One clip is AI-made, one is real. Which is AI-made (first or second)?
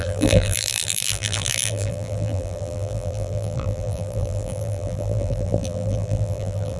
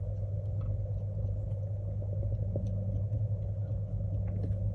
first